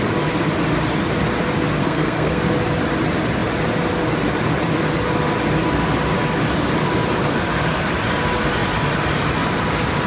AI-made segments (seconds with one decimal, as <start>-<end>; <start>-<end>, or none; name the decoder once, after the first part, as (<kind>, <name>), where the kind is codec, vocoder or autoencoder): 1.8-2.4 (codec, SNAC)